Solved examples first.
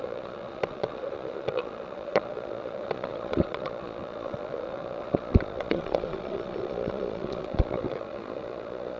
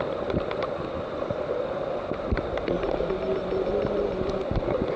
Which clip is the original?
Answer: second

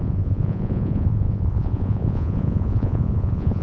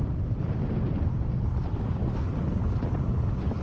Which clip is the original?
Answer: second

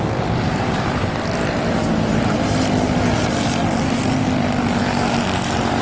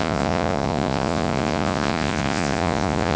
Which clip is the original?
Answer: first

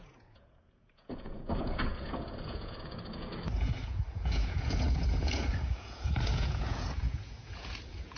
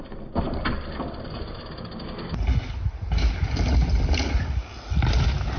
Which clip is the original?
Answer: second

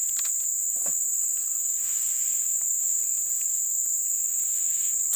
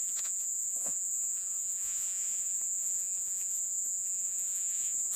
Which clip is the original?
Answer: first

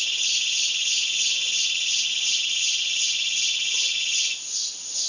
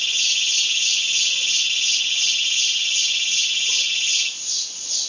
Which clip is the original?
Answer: second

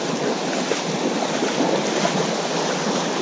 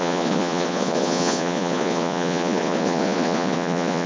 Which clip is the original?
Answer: first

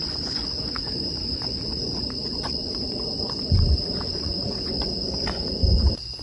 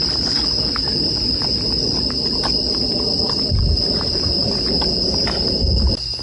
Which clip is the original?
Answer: second